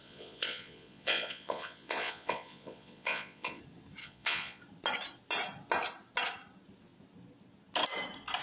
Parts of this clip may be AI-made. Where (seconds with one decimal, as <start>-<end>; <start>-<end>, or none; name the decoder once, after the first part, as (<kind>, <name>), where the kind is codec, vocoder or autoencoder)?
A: 0.0-3.6 (vocoder, Vocos); 4.0-4.6